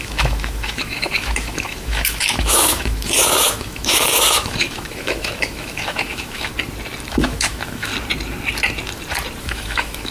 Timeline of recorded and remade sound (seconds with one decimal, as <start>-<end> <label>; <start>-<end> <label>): 0.0-6.5 remade; 6.5-7.1 recorded; 7.1-7.9 remade; 7.9-9.4 recorded; 9.4-10.1 remade